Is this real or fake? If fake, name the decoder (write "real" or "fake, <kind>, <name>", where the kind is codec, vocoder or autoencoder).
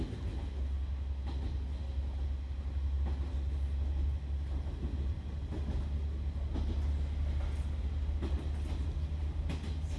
real